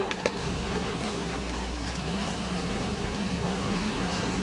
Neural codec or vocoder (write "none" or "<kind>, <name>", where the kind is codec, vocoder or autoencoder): codec, SNAC